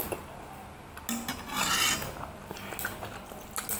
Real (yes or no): yes